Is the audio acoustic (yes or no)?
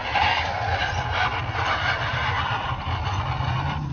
yes